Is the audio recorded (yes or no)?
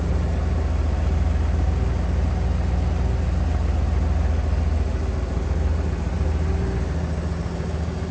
yes